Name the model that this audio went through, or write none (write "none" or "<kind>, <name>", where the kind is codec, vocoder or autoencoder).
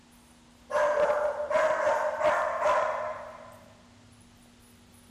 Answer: none